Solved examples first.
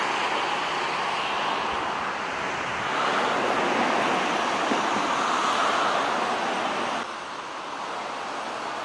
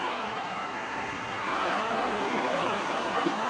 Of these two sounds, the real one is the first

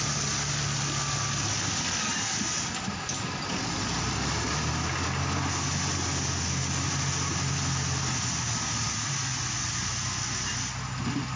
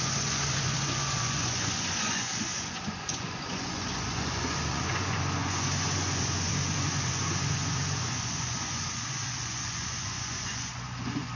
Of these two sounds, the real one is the first